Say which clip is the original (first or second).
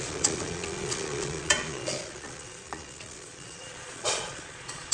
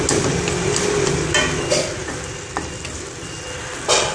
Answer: second